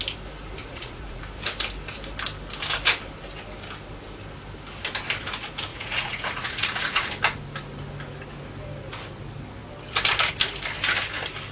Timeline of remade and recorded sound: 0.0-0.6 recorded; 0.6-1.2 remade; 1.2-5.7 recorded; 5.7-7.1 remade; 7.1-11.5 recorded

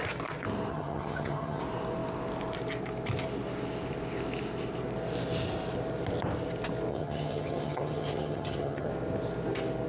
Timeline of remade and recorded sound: 0.0-0.7 recorded; 0.7-1.6 remade; 1.6-6.9 recorded; 6.9-8.9 remade; 8.9-9.9 recorded

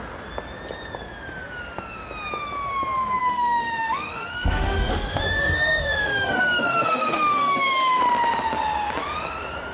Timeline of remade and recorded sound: 0.0-3.2 recorded; 3.2-8.0 remade; 8.0-9.7 recorded

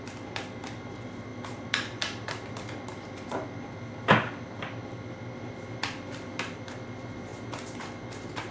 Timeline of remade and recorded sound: 0.0-8.5 remade